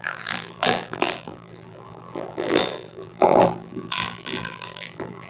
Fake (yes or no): yes